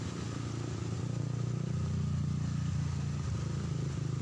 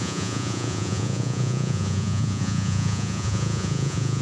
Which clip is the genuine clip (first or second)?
first